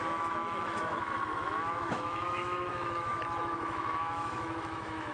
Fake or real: fake